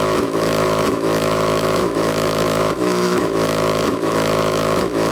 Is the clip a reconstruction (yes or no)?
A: yes